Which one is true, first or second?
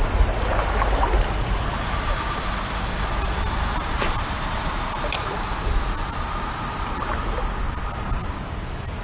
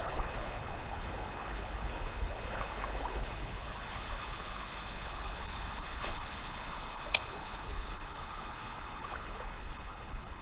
first